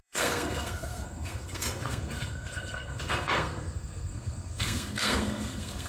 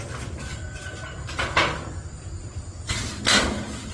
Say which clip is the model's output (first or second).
first